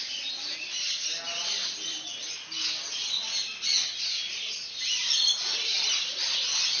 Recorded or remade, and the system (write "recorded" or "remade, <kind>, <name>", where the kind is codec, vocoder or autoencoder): recorded